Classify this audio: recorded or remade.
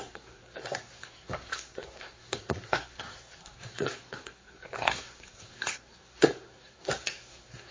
remade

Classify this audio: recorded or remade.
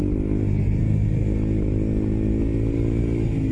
recorded